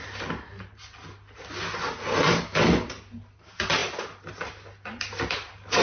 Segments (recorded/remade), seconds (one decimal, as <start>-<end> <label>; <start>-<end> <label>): 0.0-3.8 recorded; 3.8-4.3 remade; 4.3-5.8 recorded

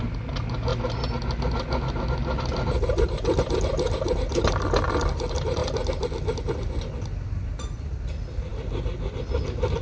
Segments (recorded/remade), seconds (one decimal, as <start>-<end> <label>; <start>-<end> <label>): 0.0-9.8 recorded

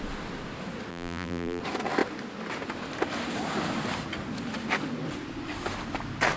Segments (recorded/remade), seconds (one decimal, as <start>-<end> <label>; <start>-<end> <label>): 0.0-0.9 recorded; 0.9-1.6 remade; 1.6-6.4 recorded

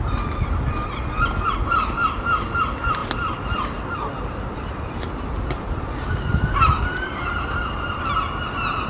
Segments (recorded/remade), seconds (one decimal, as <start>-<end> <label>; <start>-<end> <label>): 0.0-3.0 recorded; 3.0-5.9 remade; 5.9-8.9 recorded

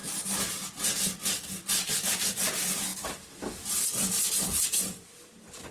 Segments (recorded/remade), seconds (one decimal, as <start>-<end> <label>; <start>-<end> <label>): 0.0-5.7 recorded

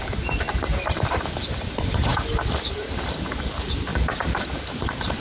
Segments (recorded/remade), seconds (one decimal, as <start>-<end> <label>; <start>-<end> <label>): 0.0-2.1 remade; 2.1-3.0 recorded; 3.0-3.9 remade; 3.9-4.4 recorded; 4.4-5.2 remade

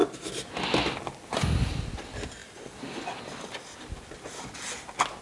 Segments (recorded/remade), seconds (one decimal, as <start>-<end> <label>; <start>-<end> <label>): 0.0-5.2 recorded

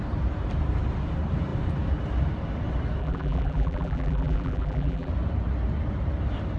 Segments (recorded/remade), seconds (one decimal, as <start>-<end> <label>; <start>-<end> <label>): 0.0-3.0 recorded; 3.0-5.1 remade; 5.1-6.6 recorded